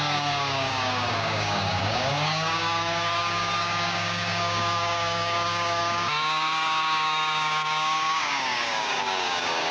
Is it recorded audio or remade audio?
remade